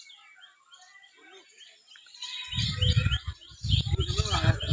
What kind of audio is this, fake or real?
real